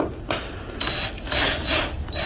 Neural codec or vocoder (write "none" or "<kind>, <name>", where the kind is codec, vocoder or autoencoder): none